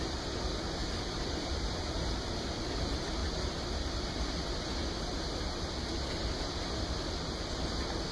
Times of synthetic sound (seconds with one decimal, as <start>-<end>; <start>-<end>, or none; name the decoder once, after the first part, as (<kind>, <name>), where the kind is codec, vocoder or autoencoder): 0.8-1.5 (vocoder, BigVGAN v2)